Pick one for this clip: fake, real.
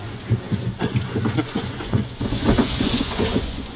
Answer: fake